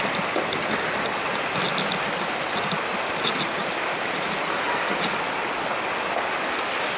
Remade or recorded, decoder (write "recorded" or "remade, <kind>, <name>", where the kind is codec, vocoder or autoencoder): recorded